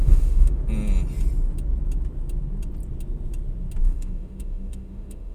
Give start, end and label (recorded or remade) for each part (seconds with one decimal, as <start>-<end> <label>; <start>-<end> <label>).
0.0-0.6 remade; 0.6-3.8 recorded; 3.8-5.3 remade